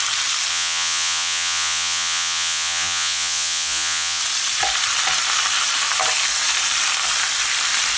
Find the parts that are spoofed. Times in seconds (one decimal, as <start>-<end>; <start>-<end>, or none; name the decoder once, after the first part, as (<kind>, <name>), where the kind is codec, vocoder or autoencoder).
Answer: 0.5-4.2 (vocoder, Vocos)